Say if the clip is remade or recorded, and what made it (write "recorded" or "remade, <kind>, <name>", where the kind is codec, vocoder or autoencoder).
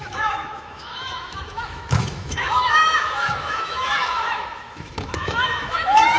remade, autoencoder, DAC-VAE